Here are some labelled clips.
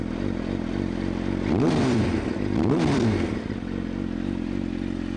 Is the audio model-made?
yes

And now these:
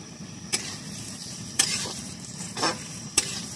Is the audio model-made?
yes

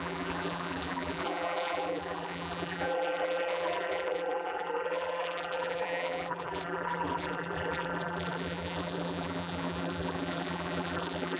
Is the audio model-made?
yes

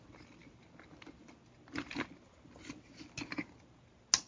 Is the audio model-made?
no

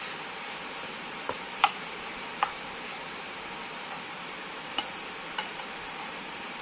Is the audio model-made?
yes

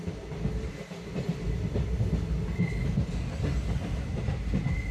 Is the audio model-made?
no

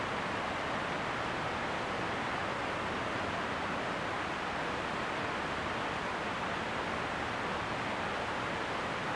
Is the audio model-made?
yes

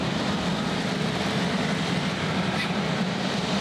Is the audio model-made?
yes